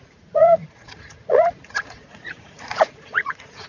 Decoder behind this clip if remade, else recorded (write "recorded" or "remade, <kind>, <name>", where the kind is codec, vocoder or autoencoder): remade, vocoder, Vocos